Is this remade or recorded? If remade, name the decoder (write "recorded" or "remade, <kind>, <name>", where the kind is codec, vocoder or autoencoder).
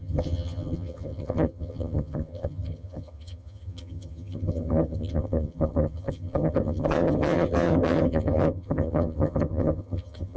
remade, vocoder, HiFi-GAN